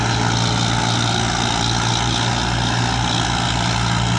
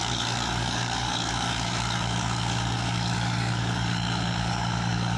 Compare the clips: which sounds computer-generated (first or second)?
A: second